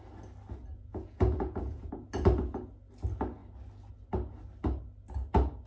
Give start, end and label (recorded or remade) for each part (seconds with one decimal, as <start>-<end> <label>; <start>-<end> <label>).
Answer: 0.0-0.6 recorded; 0.6-1.9 remade; 1.9-5.7 recorded

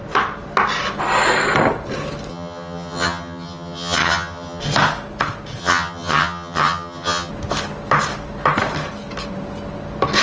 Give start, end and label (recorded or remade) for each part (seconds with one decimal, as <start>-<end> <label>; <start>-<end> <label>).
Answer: 0.0-2.3 recorded; 2.3-4.6 remade; 4.6-5.6 recorded; 5.6-7.3 remade; 7.3-10.2 recorded

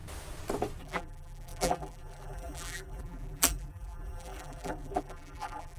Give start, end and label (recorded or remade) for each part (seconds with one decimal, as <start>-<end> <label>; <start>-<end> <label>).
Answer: 0.0-0.8 recorded; 0.8-5.8 remade

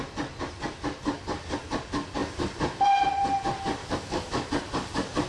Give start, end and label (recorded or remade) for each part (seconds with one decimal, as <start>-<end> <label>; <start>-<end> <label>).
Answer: 0.0-3.8 recorded; 3.8-4.5 remade; 4.5-5.3 recorded